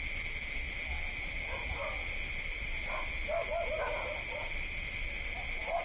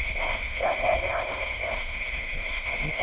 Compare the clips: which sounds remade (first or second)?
second